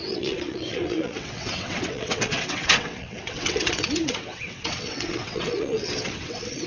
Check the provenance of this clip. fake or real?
fake